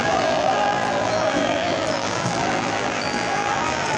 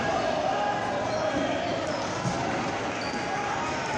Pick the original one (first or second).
second